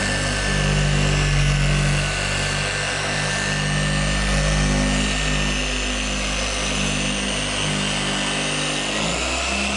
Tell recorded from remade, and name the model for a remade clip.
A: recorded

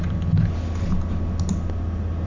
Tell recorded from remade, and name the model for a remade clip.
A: recorded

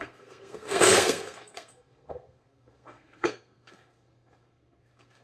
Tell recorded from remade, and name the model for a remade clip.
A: remade, codec, SNAC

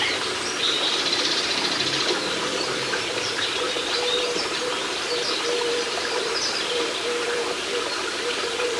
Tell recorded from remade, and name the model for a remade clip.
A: remade, vocoder, BigVGAN v2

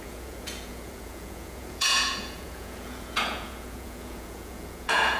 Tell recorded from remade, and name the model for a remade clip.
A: remade, vocoder, Vocos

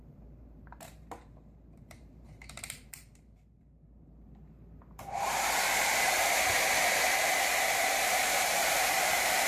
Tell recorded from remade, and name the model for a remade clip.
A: remade, vocoder, BigVGAN v2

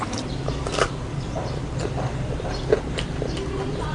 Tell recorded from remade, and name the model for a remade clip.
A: remade, vocoder, BigVGAN v2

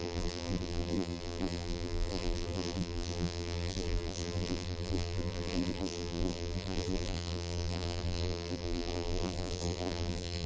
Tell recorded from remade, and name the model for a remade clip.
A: remade, vocoder, BigVGAN v2